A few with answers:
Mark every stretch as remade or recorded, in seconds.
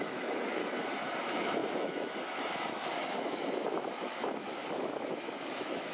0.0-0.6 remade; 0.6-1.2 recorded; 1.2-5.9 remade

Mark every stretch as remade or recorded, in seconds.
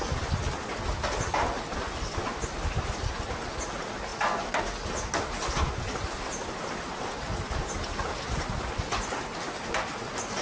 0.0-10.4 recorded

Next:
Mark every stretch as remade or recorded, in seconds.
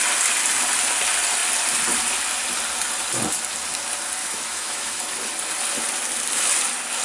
0.0-4.2 recorded; 4.2-5.0 remade; 5.0-7.0 recorded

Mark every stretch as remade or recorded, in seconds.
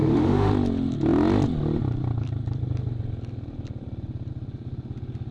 0.0-0.5 remade; 0.5-5.3 recorded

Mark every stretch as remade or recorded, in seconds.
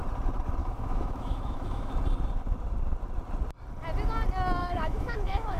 0.0-0.6 recorded; 0.6-1.9 remade; 1.9-4.6 recorded; 4.6-5.6 remade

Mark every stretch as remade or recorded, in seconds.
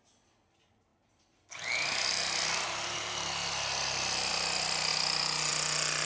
0.0-6.0 recorded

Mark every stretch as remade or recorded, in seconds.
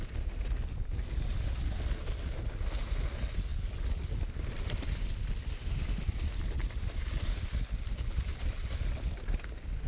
0.0-9.9 recorded